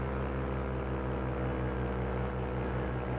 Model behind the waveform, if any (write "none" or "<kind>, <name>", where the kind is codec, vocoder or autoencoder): none